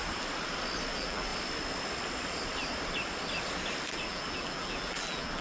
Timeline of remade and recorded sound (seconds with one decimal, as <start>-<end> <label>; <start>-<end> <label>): 0.0-0.9 recorded; 0.9-1.3 remade; 1.3-3.9 recorded; 3.9-5.4 remade